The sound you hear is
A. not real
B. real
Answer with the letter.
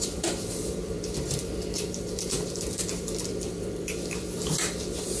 A